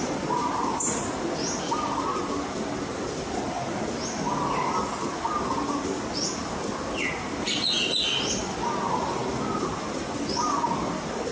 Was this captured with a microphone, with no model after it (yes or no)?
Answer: yes